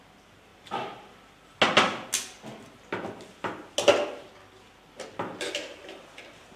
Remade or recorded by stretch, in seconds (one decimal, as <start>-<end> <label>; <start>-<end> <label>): 0.0-6.6 recorded